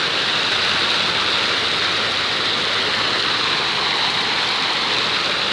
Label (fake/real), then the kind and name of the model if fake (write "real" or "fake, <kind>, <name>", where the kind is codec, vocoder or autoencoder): real